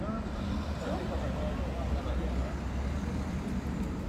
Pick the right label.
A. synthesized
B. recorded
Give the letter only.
B